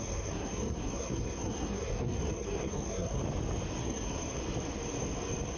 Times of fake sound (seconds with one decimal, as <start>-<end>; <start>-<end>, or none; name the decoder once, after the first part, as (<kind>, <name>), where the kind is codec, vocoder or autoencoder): 0.0-3.2 (codec, SNAC); 3.8-4.4